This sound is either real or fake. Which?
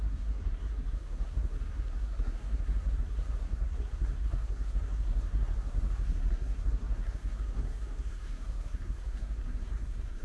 fake